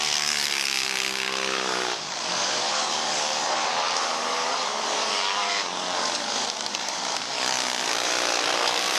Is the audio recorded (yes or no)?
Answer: no